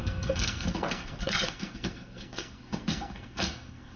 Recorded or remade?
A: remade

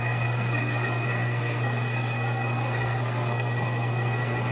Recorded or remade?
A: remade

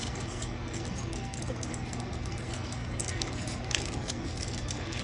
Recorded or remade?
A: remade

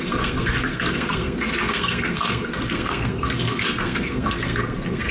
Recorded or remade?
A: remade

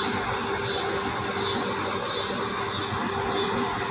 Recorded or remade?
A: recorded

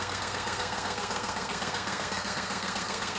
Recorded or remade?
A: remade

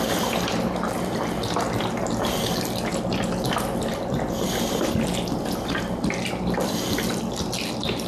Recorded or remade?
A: recorded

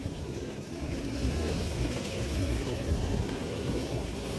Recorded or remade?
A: remade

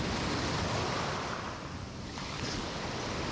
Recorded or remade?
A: recorded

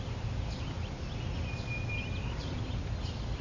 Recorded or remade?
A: recorded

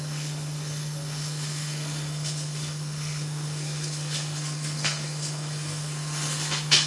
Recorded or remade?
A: remade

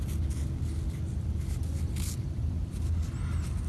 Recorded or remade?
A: recorded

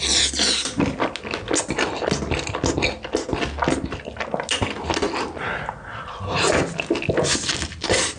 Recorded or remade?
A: recorded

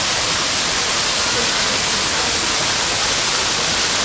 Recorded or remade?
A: recorded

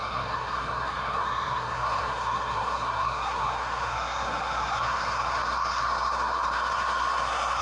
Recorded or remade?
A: remade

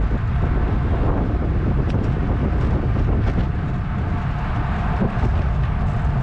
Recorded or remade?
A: recorded